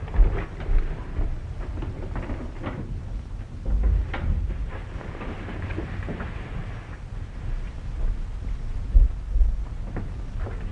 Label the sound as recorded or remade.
recorded